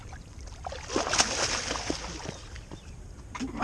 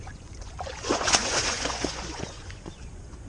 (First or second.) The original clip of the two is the first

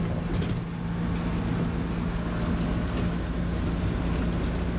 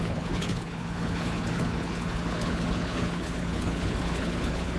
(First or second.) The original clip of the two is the first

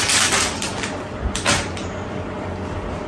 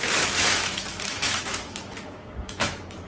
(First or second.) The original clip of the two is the first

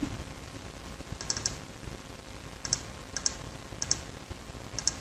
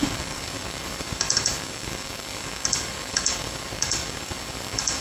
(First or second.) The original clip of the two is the first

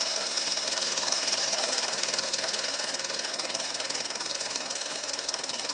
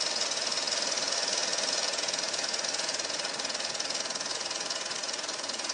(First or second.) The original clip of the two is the second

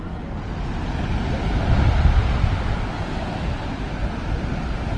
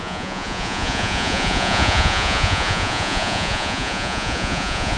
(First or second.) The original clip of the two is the first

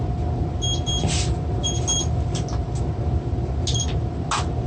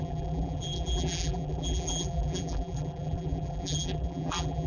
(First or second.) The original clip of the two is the first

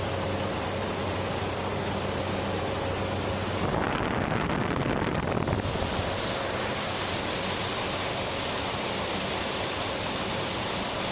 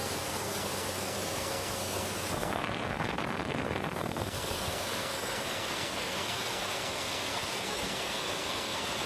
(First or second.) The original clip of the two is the first